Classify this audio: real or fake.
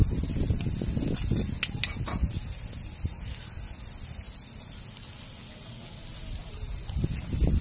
real